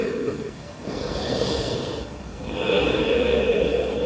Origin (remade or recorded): remade